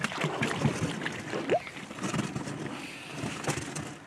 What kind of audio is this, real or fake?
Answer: real